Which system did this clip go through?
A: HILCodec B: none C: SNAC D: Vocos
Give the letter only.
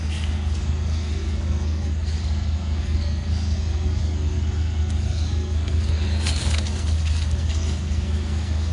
C